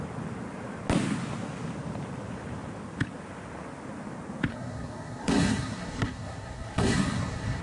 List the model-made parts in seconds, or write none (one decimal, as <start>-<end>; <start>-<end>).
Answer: 4.5-7.6